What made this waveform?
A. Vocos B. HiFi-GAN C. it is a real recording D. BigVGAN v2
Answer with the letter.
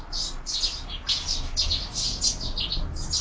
C